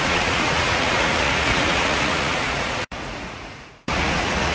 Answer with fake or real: fake